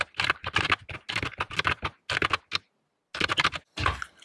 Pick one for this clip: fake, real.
real